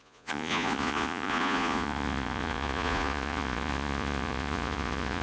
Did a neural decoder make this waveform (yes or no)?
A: yes